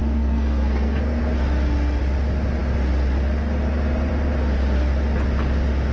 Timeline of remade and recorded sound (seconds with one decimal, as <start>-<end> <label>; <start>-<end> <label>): 0.0-1.2 remade; 1.2-5.9 recorded